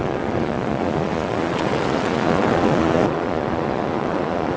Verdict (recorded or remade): remade